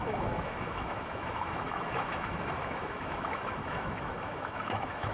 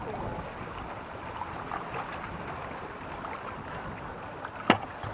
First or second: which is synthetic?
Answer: first